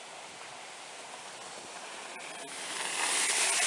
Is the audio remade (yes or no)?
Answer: no